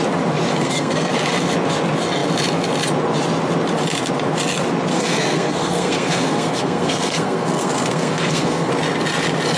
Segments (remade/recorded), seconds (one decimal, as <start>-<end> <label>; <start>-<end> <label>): 0.0-0.5 recorded; 0.5-1.1 remade; 1.1-4.9 recorded; 4.9-8.7 remade; 8.7-9.6 recorded